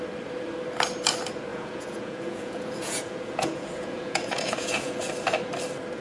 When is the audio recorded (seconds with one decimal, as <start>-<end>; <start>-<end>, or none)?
0.0-1.5; 5.1-6.0